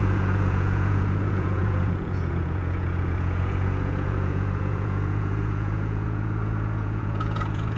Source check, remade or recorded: remade